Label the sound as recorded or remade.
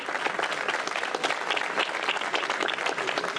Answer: recorded